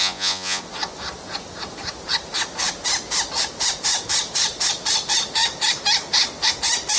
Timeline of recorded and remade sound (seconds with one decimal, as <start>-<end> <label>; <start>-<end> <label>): 0.0-0.6 remade; 0.6-7.0 recorded